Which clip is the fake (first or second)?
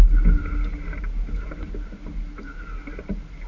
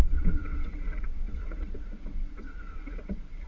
second